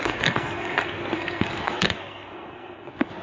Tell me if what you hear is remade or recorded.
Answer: remade